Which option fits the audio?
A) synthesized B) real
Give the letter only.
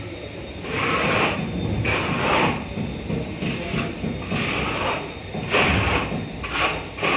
B